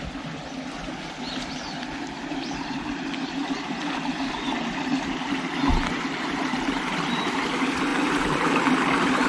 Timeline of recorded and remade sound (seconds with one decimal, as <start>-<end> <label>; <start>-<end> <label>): 0.0-9.3 recorded